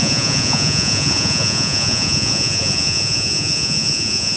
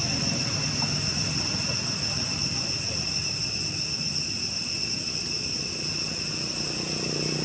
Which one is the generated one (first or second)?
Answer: first